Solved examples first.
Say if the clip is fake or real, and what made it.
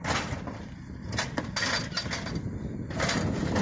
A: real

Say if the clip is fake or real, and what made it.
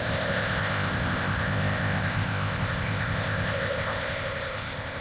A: fake, codec, ZipCodec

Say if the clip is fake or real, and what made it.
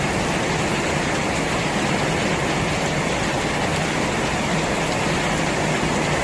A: real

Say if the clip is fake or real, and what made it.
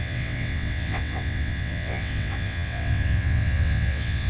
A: fake, vocoder, WaveNeXt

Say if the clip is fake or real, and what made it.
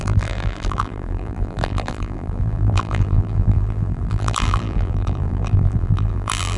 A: fake, vocoder, BigVGAN v2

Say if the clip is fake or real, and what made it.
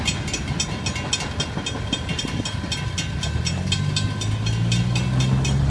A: real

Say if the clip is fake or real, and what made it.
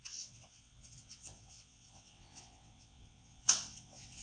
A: fake, vocoder, WaveNeXt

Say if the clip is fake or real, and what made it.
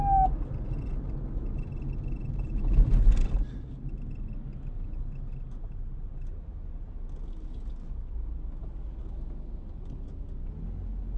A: real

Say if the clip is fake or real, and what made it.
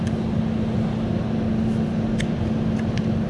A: real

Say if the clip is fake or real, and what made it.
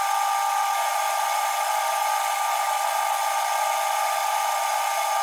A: real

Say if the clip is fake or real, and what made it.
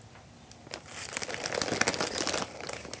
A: real